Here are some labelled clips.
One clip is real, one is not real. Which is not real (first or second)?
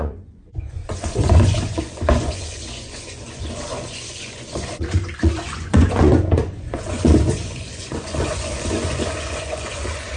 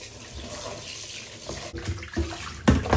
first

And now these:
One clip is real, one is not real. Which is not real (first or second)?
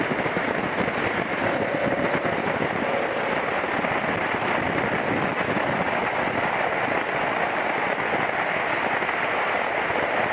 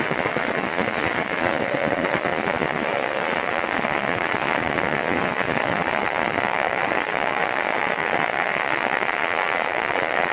second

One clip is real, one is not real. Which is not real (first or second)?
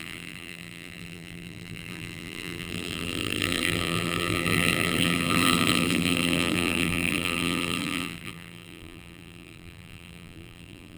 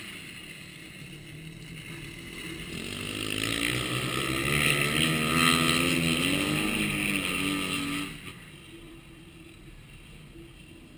first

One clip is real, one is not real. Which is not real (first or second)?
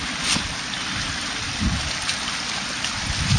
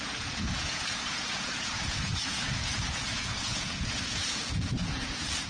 second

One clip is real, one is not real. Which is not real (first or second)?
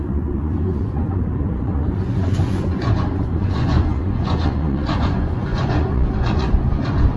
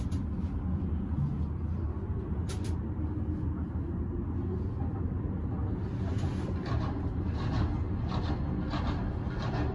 first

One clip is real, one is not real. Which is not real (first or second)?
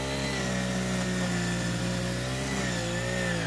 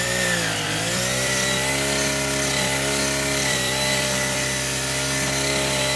second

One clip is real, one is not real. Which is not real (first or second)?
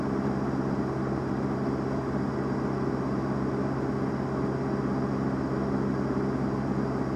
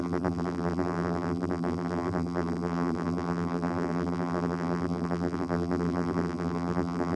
second